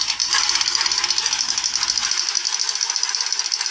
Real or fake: real